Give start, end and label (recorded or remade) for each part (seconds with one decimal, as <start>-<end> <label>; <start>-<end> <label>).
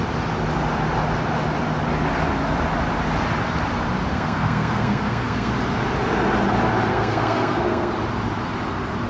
0.0-4.1 recorded; 4.1-5.5 remade; 5.5-6.9 recorded; 6.9-7.9 remade; 7.9-9.1 recorded